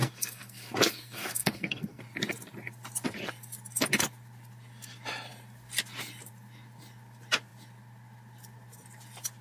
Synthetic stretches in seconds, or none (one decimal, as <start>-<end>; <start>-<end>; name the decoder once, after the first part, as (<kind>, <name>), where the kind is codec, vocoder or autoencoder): 0.0-2.0 (codec, SNAC)